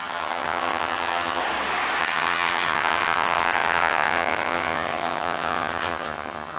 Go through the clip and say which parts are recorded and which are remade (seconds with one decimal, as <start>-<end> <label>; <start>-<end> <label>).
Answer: 0.0-1.4 remade; 1.4-2.0 recorded; 2.0-6.6 remade